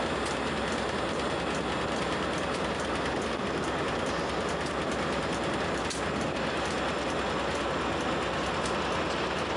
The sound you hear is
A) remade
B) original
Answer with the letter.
B